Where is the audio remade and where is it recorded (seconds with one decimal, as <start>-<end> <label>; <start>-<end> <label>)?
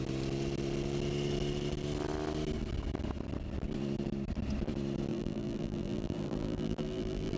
0.0-5.1 recorded; 5.1-7.4 remade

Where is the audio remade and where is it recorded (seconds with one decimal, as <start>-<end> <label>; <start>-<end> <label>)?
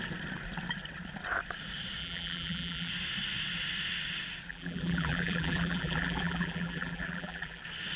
0.0-2.0 recorded; 2.0-2.9 remade; 2.9-4.5 recorded; 4.5-7.6 remade; 7.6-8.0 recorded